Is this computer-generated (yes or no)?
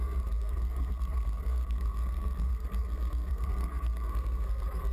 yes